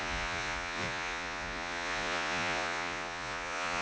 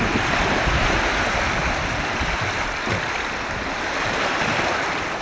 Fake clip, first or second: first